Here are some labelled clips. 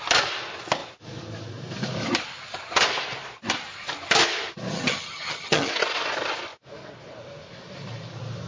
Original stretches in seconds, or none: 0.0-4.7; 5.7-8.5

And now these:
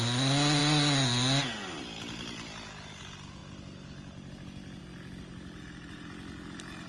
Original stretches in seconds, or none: 0.0-6.9